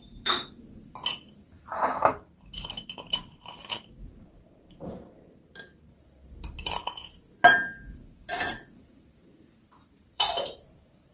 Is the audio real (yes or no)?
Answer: no